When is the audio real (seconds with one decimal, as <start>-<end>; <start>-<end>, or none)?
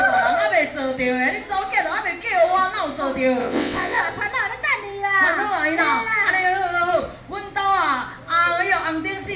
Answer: 0.0-3.4; 4.0-9.4